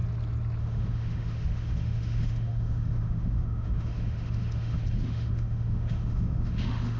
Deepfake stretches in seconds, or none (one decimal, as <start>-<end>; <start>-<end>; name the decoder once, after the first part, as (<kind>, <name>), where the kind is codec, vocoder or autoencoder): 0.6-7.0 (autoencoder, DAC-VAE)